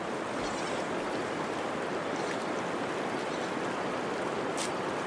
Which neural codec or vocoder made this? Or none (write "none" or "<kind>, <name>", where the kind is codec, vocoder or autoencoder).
none